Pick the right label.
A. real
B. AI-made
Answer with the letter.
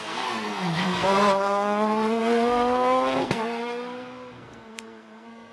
B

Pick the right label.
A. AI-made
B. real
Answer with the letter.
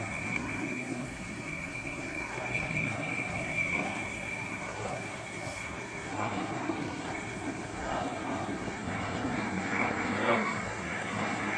A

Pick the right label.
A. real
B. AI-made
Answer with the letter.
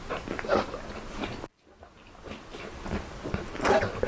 A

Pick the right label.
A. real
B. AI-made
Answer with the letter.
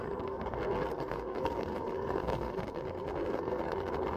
B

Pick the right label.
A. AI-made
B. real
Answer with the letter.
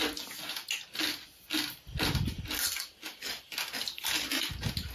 B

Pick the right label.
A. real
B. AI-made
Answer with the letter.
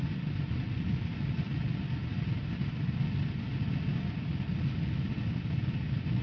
A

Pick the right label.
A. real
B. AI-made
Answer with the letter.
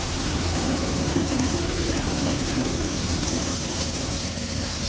B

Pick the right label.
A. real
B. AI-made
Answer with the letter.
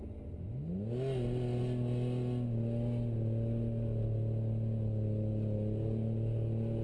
A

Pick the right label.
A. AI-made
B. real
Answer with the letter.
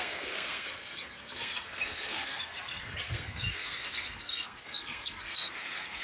A